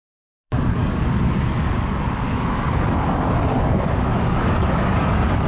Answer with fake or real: fake